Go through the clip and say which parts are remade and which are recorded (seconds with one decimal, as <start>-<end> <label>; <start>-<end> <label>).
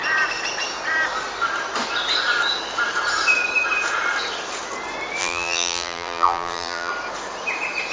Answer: 0.0-5.2 recorded; 5.2-6.9 remade; 6.9-7.9 recorded